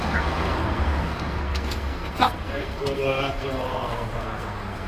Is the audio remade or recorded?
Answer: remade